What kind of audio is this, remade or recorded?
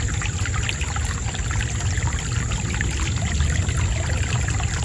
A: recorded